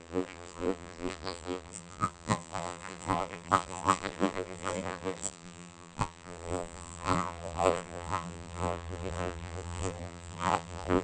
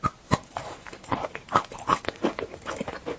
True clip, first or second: second